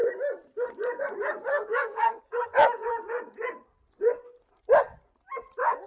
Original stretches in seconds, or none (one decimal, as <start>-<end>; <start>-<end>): 0.0-1.5; 2.2-5.9